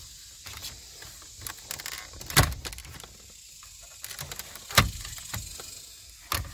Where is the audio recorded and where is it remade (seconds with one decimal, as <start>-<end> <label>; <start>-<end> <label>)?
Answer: 0.0-6.5 recorded